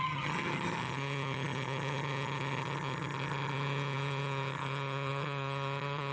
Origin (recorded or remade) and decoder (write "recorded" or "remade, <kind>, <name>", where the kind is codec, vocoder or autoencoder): remade, vocoder, HiFi-GAN